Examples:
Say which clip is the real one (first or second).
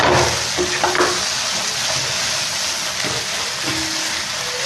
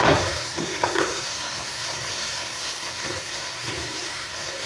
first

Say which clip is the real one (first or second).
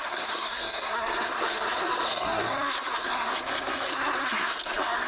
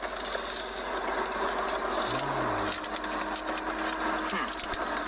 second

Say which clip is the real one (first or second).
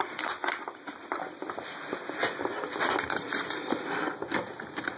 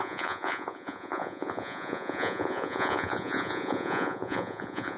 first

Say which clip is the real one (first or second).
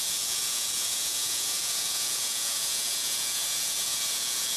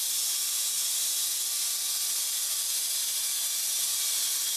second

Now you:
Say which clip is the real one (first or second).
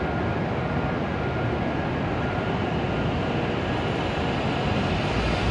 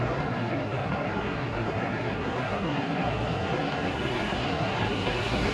first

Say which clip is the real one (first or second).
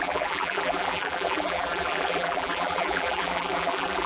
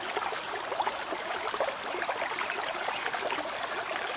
second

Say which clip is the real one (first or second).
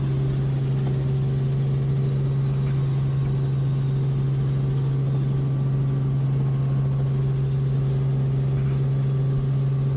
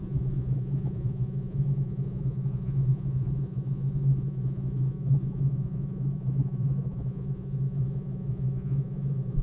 first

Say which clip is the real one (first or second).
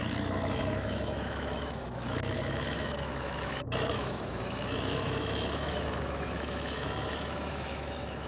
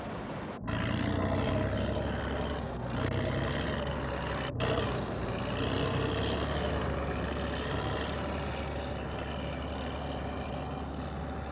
second